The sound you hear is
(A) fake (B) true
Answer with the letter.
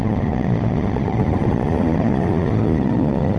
A